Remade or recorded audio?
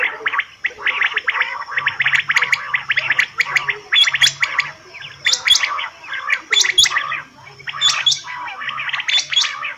recorded